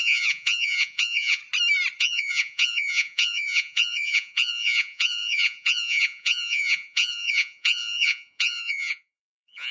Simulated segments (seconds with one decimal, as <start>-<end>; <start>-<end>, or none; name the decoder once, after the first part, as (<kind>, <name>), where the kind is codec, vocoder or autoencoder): 0.0-1.4 (vocoder, Vocos); 2.0-9.7